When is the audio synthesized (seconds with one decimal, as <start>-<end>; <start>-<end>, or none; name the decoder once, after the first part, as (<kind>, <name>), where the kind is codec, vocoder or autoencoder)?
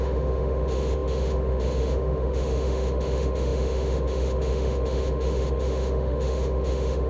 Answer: 0.0-7.1 (autoencoder, DAC-VAE)